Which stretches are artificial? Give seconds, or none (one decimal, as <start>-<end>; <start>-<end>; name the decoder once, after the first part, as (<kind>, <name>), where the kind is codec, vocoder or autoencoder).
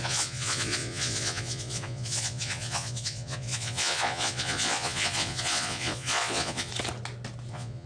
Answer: 0.0-6.7 (vocoder, Vocos); 7.5-7.9